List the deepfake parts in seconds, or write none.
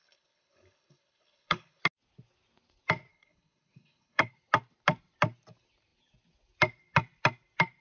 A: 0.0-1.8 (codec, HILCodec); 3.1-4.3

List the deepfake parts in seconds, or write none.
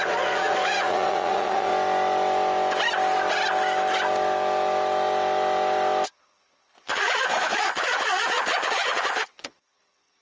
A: 0.0-1.7 (vocoder, Vocos); 6.1-10.2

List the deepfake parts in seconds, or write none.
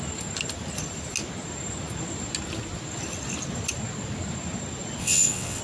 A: 5.0-5.6 (vocoder, WaveNeXt)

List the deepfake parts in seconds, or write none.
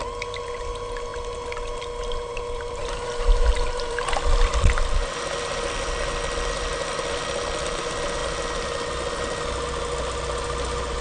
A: 2.3-4.1 (vocoder, BigVGAN v2)